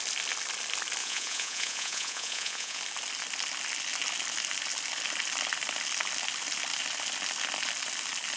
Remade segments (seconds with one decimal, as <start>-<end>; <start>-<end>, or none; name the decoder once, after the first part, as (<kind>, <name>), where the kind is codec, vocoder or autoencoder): 1.0-2.8 (vocoder, Vocos)